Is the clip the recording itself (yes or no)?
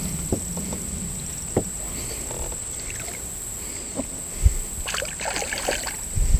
yes